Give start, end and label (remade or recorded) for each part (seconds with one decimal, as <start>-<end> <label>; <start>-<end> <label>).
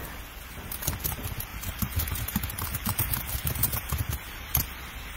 0.0-1.5 recorded; 1.5-4.6 remade; 4.6-5.2 recorded